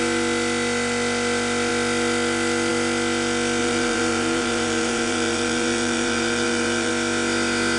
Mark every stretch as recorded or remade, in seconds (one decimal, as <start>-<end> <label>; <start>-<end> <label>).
0.0-3.6 recorded; 3.6-6.9 remade; 6.9-7.8 recorded